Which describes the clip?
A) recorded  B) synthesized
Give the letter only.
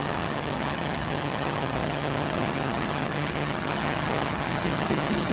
B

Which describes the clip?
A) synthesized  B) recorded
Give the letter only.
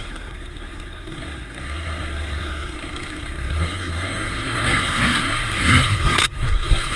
A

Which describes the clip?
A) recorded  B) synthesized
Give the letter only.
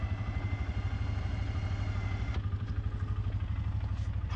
A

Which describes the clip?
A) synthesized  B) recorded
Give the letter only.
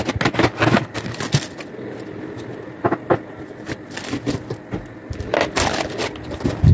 B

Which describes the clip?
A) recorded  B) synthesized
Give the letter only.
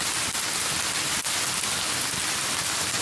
A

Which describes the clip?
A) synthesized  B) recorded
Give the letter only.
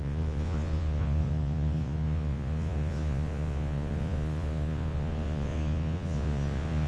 A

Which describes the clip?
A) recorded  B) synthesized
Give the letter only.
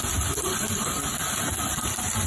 A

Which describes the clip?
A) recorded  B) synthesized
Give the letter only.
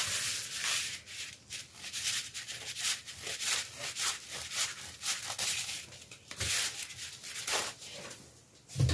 A